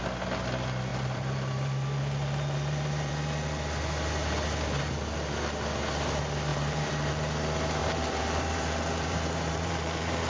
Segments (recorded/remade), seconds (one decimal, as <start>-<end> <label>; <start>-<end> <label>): 0.0-0.9 recorded; 0.9-3.1 remade; 3.1-6.5 recorded; 6.5-7.1 remade; 7.1-7.8 recorded; 7.8-10.3 remade